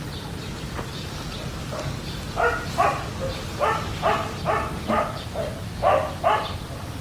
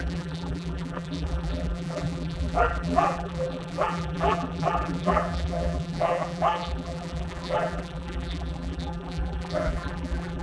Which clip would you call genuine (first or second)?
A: first